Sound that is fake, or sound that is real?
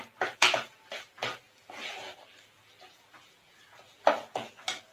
fake